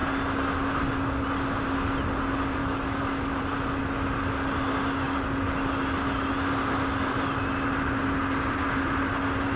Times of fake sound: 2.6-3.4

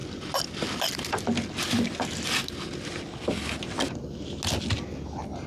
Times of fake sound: none

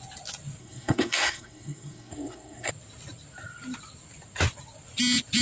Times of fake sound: 0.6-2.7

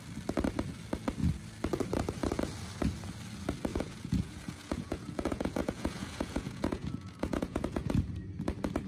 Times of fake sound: 3.7-8.0

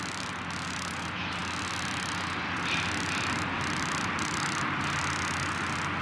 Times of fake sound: none

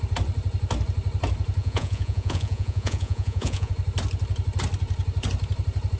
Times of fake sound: 1.6-3.7

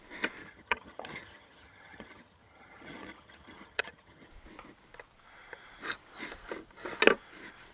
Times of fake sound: 0.4-4.3